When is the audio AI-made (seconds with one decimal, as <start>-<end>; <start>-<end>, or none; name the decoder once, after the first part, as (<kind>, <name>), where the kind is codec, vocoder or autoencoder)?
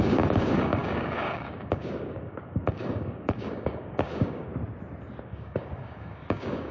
0.0-4.5 (codec, DAC); 5.2-6.7